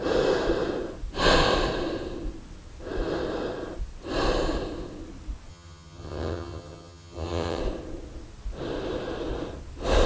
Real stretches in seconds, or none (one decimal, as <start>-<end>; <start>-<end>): 0.0-5.5; 7.6-10.1